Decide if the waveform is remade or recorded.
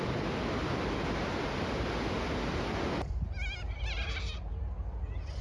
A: recorded